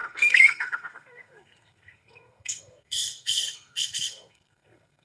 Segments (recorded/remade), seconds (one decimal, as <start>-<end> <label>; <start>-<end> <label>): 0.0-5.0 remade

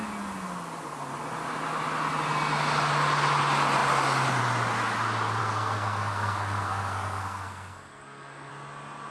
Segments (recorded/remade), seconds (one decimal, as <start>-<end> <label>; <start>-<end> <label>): 0.0-5.4 recorded; 5.4-8.5 remade; 8.5-9.1 recorded

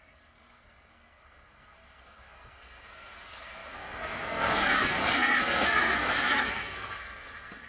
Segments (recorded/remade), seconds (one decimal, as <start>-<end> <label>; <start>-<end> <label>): 0.0-7.7 remade

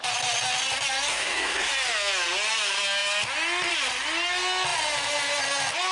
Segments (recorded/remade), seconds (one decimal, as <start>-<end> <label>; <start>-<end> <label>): 0.0-1.1 recorded; 1.1-1.7 remade; 1.7-5.9 recorded

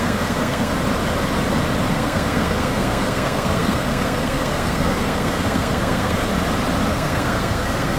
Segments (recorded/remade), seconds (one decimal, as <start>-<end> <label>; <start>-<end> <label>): 0.0-0.7 remade; 0.7-1.9 recorded; 1.9-6.3 remade; 6.3-6.9 recorded; 6.9-8.0 remade

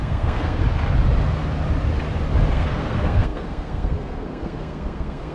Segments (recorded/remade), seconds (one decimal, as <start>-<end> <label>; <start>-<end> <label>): 0.0-0.6 remade; 0.6-2.5 recorded; 2.5-5.3 remade